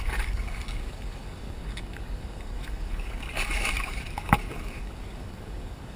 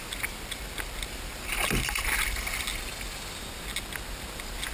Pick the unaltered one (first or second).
second